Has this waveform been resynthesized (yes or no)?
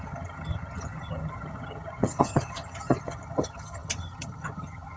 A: yes